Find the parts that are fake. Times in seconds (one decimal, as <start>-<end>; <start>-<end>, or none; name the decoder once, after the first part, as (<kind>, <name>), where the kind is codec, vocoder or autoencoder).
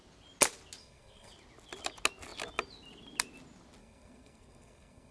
0.8-1.3 (codec, SNAC); 3.8-5.1